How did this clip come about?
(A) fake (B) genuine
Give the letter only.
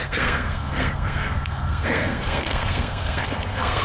A